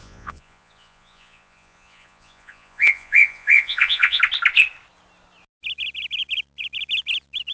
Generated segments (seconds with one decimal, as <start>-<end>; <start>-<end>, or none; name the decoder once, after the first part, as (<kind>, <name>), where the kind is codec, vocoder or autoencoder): 0.0-4.2 (vocoder, Vocos)